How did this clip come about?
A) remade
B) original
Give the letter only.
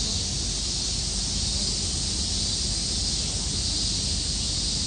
B